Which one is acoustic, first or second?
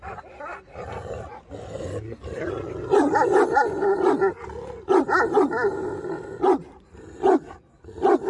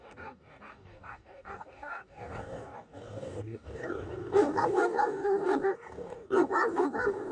first